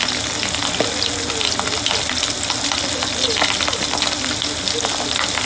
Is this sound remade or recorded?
recorded